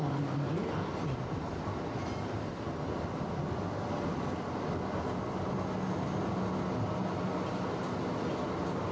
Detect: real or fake real